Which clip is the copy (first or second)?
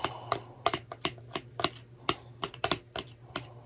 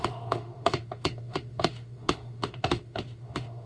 second